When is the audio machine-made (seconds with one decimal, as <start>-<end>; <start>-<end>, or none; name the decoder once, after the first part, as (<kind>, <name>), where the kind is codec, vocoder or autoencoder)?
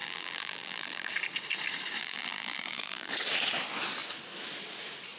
0.0-1.1 (vocoder, BigVGAN v2); 2.0-3.1